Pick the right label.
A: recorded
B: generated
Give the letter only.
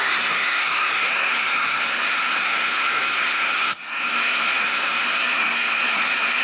B